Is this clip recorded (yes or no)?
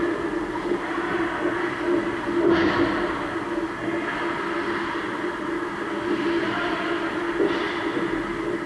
yes